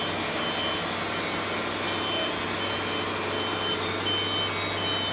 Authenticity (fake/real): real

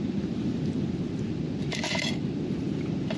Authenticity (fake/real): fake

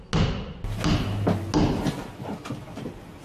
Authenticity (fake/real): real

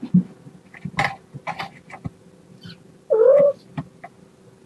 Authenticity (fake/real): real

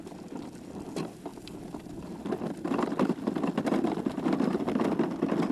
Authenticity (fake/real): real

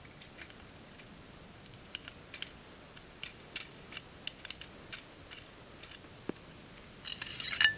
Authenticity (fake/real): real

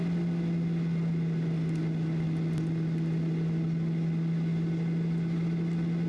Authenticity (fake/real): real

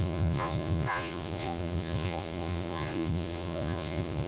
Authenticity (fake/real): fake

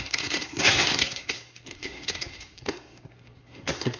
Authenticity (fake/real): fake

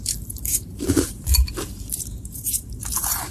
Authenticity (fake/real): fake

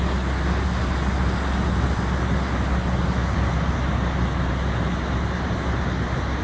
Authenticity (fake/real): real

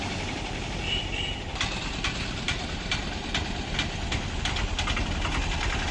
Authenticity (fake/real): real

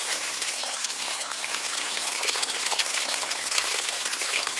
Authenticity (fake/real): fake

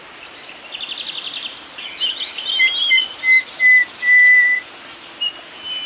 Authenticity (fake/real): real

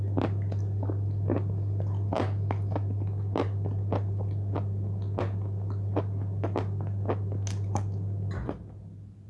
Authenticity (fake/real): real